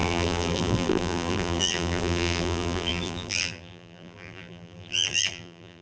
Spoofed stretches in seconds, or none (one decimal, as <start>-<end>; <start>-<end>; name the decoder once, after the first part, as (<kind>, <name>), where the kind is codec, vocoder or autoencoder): 0.0-5.8 (vocoder, BigVGAN v2)

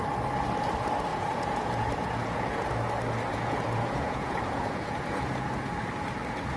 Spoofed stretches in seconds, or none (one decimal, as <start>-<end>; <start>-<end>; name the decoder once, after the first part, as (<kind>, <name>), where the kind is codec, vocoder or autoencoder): 1.1-2.7 (vocoder, Vocos); 3.3-5.5

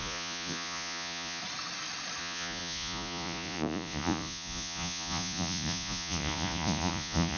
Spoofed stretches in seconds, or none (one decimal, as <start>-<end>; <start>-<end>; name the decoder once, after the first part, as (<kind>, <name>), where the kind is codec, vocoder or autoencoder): 0.0-1.4 (vocoder, Vocos); 2.2-7.4

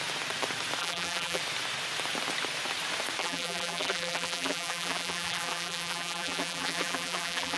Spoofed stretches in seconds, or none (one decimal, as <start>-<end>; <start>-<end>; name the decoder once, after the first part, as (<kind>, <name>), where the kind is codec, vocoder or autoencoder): 0.8-1.4 (vocoder, BigVGAN v2); 3.2-7.6

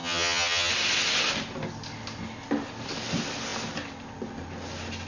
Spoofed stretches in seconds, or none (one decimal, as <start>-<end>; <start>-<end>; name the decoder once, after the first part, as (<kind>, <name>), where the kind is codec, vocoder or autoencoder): 0.0-0.7 (vocoder, HiFi-GAN)

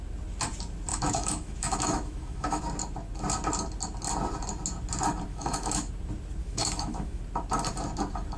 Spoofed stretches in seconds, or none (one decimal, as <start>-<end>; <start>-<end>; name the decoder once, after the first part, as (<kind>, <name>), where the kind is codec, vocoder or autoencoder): 0.9-2.6 (autoencoder, DAC-VAE); 5.3-5.9; 6.4-7.2

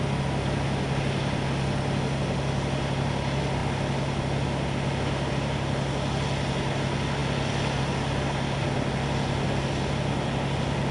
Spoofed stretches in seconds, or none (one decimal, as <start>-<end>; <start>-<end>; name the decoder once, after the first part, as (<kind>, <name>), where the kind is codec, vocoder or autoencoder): none

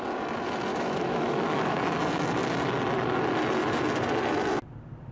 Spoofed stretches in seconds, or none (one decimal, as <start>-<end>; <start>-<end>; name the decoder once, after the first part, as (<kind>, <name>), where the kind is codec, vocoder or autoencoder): 0.7-1.8 (autoencoder, DAC-VAE)